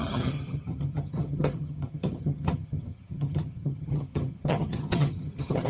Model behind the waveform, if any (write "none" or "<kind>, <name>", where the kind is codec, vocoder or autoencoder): vocoder, HiFi-GAN